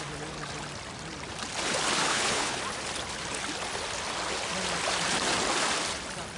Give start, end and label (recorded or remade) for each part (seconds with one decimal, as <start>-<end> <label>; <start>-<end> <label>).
0.0-2.1 recorded; 2.1-2.6 remade; 2.6-6.4 recorded